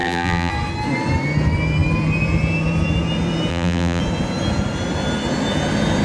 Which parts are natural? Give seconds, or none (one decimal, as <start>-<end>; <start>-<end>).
0.5-3.5; 4.0-6.0